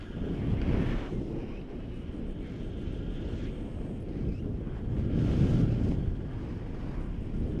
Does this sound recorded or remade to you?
recorded